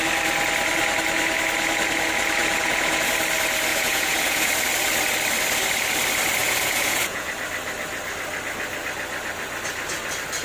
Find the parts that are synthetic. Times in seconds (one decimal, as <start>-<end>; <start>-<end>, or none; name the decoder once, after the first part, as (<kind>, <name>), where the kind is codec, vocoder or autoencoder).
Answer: 2.4-3.1 (vocoder, Vocos); 3.7-4.5; 6.4-7.3